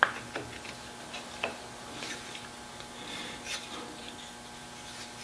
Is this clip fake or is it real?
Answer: real